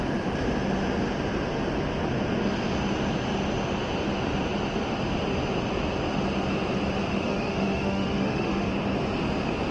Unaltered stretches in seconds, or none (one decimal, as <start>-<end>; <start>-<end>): 0.0-7.1; 8.7-9.7

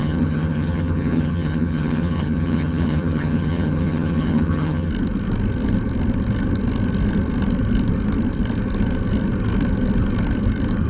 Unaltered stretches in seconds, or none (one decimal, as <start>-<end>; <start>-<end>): 4.9-10.9

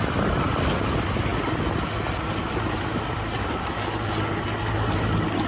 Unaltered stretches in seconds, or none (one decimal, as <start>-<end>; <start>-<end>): 0.0-5.5

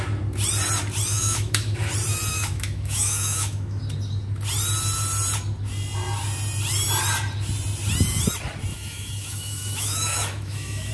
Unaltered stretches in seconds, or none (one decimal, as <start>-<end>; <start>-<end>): 0.0-1.1; 1.8-2.3; 3.8-8.7

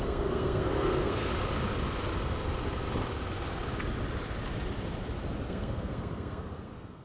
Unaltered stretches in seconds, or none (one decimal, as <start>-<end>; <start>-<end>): 1.3-5.5